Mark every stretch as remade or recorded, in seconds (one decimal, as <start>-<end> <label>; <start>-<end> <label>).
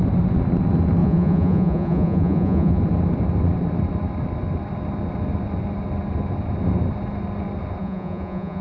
0.0-1.0 recorded; 1.0-2.8 remade; 2.8-7.8 recorded; 7.8-8.6 remade